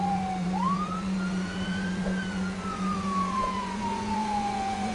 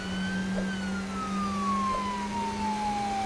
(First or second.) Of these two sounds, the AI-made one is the first